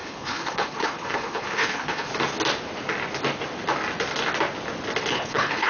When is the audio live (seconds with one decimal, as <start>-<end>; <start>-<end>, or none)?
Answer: 2.1-5.1